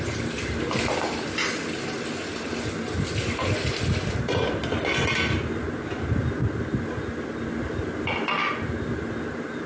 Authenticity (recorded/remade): recorded